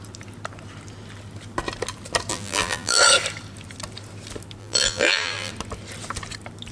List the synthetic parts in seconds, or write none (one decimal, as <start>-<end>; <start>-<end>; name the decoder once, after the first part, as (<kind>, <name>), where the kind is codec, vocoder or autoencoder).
2.3-3.0 (vocoder, BigVGAN v2); 4.6-5.5